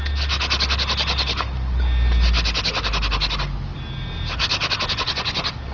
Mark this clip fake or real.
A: real